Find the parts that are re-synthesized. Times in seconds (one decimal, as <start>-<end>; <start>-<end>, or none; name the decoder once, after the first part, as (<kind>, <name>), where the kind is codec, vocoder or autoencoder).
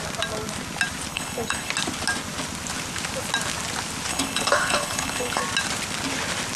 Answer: 1.1-1.7 (codec, HILCodec); 4.1-5.4